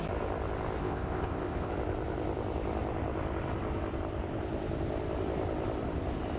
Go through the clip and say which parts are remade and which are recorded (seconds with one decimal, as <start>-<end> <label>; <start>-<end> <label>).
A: 0.0-0.8 recorded; 0.8-1.7 remade; 1.7-6.4 recorded